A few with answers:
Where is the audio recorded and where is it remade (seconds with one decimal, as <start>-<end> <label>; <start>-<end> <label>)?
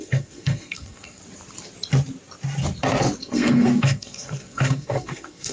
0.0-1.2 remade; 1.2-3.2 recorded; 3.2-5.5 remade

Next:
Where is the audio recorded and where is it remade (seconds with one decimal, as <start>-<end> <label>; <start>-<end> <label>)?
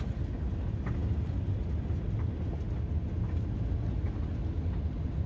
0.0-5.3 recorded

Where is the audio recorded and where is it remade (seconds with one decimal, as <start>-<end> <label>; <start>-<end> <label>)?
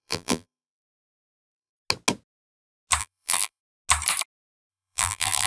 0.0-1.7 remade; 1.7-3.0 recorded; 3.0-3.6 remade; 3.6-4.7 recorded; 4.7-5.5 remade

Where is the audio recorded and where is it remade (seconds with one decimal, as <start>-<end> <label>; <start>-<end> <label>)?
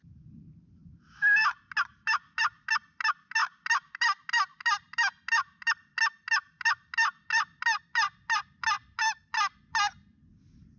0.0-10.8 recorded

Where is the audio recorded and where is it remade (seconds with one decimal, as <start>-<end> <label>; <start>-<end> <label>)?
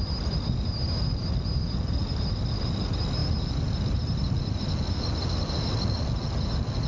0.0-6.9 recorded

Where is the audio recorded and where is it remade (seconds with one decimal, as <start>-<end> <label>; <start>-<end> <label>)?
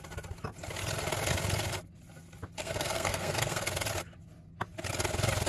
0.0-2.6 recorded; 2.6-3.7 remade; 3.7-5.5 recorded